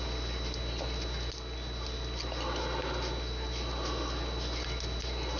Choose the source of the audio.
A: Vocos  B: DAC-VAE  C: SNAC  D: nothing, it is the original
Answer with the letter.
D